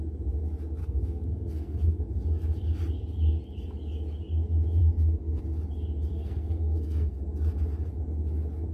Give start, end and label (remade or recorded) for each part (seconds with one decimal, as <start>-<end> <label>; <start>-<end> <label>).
0.0-0.8 recorded; 0.8-2.0 remade; 2.0-4.8 recorded; 4.8-5.4 remade; 5.4-6.1 recorded; 6.1-7.2 remade; 7.2-8.7 recorded